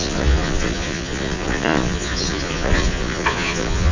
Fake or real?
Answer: fake